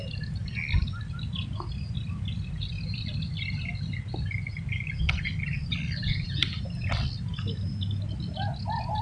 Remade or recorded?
recorded